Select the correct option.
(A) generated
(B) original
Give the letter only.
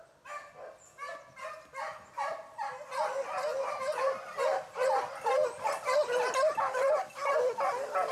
B